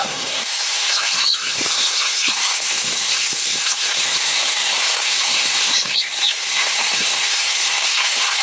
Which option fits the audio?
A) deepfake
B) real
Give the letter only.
A